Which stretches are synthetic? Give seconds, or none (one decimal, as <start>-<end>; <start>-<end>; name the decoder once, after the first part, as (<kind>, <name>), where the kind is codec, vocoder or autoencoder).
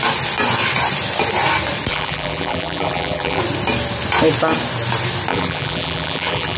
1.9-3.4 (vocoder, BigVGAN v2); 5.3-6.6